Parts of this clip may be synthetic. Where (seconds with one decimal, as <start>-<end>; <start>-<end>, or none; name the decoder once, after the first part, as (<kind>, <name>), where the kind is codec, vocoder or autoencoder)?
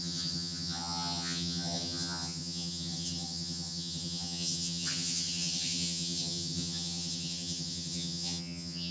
0.0-8.9 (vocoder, HiFi-GAN)